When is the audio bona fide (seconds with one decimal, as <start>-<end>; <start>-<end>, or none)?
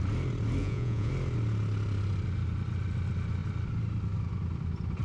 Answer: 0.0-0.6; 1.1-5.0